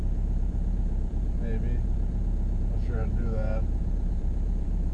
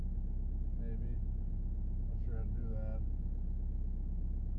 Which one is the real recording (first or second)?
second